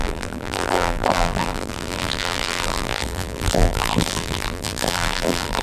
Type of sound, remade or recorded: remade